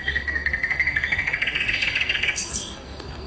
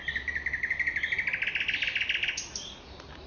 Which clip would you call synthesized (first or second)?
first